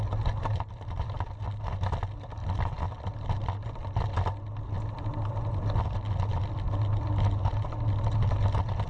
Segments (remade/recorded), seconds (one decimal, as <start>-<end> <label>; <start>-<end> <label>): 0.0-8.9 recorded